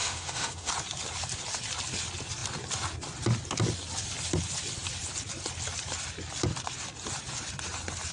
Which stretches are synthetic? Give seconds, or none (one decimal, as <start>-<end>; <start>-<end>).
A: 0.0-0.7